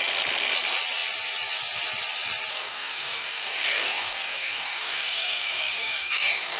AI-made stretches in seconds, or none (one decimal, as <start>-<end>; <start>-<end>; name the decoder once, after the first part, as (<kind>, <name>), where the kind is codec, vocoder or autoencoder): 2.5-6.6 (codec, DAC)